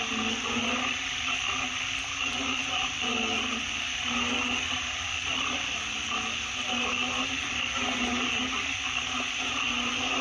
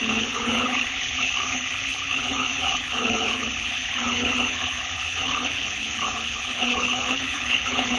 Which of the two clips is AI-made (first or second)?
second